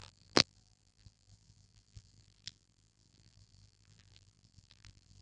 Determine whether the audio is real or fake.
fake